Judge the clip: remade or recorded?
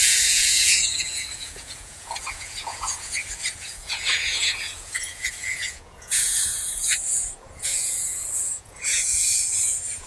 remade